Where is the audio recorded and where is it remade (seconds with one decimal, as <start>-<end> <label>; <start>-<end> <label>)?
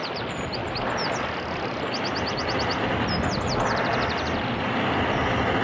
0.0-5.6 recorded